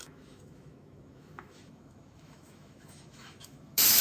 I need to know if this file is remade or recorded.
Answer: remade